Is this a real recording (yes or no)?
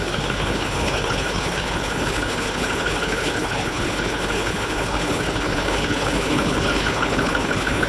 no